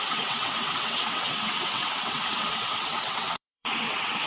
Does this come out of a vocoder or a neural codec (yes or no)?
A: yes